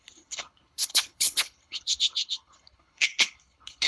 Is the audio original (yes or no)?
no